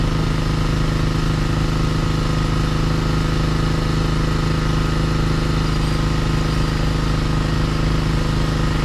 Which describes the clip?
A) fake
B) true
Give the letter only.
B